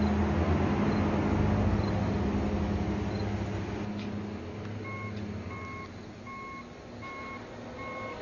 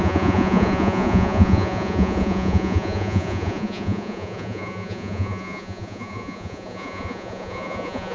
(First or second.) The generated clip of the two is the second